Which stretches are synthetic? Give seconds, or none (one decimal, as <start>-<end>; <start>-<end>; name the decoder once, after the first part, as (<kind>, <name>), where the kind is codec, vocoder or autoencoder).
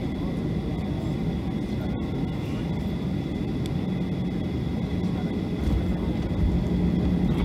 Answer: none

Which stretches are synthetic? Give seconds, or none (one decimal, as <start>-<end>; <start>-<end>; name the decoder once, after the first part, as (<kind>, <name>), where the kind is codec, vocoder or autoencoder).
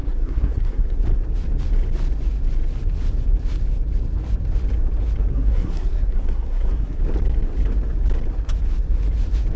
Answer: 0.0-1.0 (codec, SNAC); 5.3-7.0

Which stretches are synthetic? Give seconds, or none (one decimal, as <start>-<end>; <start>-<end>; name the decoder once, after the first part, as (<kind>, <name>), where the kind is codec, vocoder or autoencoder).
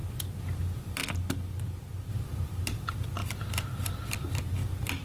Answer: 0.6-1.0 (vocoder, BigVGAN v2); 2.1-5.0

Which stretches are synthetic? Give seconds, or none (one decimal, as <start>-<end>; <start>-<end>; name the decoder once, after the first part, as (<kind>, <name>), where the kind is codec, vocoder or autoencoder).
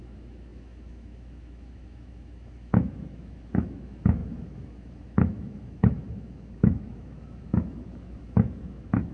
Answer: 0.0-9.1 (autoencoder, DAC-VAE)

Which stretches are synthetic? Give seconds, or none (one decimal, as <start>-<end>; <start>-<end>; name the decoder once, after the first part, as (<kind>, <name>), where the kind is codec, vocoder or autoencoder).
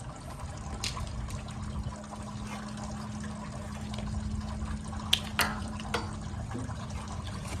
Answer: 5.5-6.1 (vocoder, BigVGAN v2); 6.6-7.6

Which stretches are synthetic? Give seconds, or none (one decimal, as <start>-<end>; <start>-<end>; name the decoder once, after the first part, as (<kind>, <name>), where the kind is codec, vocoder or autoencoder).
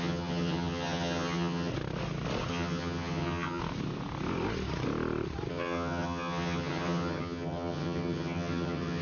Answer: 0.0-1.7 (vocoder, HiFi-GAN); 2.5-3.6; 5.5-9.0